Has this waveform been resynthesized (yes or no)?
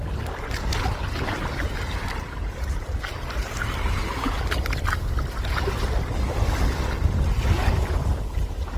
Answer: no